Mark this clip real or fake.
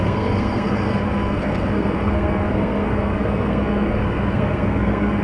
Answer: fake